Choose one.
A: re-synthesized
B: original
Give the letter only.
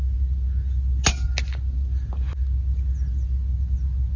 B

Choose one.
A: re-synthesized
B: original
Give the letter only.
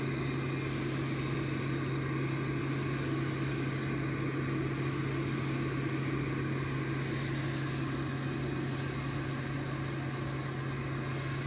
B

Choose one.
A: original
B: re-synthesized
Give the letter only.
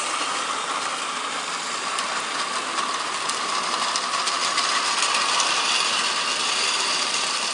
B